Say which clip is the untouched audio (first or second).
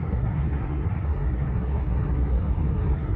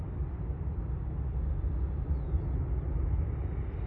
second